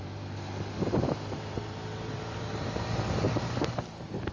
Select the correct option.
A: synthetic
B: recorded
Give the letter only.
A